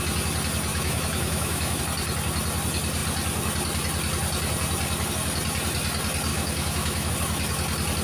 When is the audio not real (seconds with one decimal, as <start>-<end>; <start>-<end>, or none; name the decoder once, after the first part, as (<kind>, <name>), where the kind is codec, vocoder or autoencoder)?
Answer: 0.7-1.8 (autoencoder, DAC-VAE); 6.3-7.1